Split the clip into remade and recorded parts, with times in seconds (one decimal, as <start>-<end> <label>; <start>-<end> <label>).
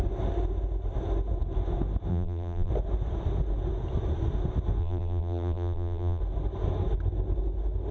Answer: 0.0-2.1 recorded; 2.1-2.7 remade; 2.7-4.8 recorded; 4.8-6.2 remade; 6.2-7.9 recorded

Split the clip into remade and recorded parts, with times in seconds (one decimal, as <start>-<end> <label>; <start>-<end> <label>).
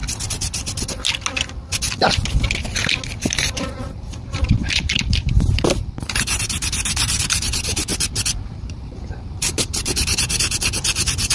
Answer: 0.0-3.3 recorded; 3.3-7.9 remade; 7.9-8.5 recorded; 8.5-11.3 remade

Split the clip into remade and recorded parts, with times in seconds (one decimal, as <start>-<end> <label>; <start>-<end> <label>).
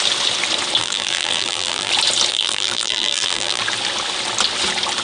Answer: 0.0-0.8 recorded; 0.8-1.9 remade; 1.9-2.3 recorded; 2.3-3.6 remade; 3.6-5.0 recorded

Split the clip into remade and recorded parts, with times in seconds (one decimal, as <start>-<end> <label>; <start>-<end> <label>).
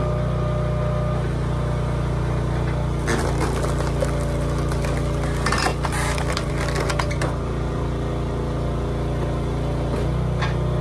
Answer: 0.0-5.7 recorded; 5.7-6.5 remade; 6.5-10.8 recorded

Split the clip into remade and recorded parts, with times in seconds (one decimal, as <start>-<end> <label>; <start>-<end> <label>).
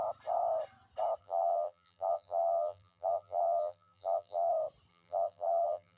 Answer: 0.0-1.2 recorded; 1.2-4.5 remade; 4.5-4.9 recorded; 4.9-6.0 remade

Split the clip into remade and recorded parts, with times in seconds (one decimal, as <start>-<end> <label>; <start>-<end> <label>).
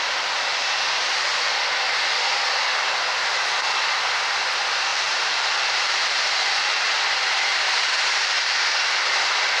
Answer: 0.0-1.3 recorded; 1.3-2.2 remade; 2.2-4.9 recorded; 4.9-6.9 remade; 6.9-7.5 recorded; 7.5-8.6 remade; 8.6-9.6 recorded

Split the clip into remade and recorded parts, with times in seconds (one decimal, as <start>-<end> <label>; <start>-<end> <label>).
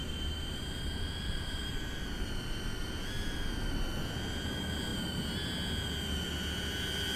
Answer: 0.0-2.6 remade; 2.6-7.2 recorded